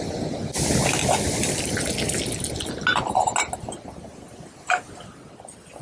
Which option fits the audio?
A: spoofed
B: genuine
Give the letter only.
B